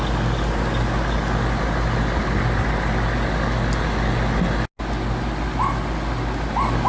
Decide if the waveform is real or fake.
real